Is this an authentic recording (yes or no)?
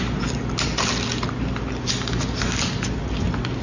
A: yes